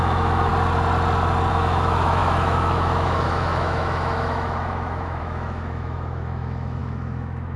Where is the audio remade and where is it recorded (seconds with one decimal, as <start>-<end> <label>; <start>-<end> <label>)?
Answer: 0.0-0.5 remade; 0.5-1.5 recorded; 1.5-7.6 remade